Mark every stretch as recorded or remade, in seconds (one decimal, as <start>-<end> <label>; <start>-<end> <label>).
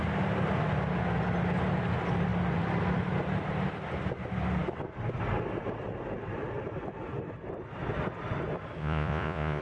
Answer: 0.0-8.8 recorded; 8.8-9.6 remade